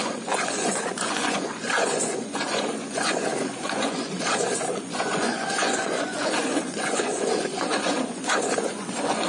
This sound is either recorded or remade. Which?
remade